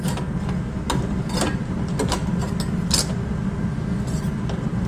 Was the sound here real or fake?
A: real